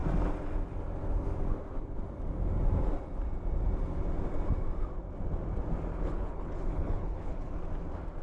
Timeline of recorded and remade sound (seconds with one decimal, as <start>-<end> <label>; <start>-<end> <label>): 0.0-5.9 recorded; 5.9-7.5 remade; 7.5-8.2 recorded